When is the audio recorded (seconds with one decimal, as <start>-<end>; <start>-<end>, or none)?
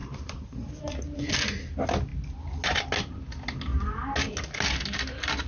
0.7-5.5